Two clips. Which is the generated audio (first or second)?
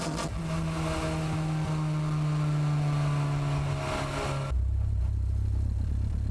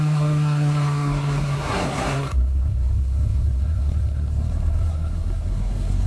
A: second